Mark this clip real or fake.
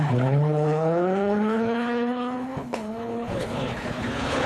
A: fake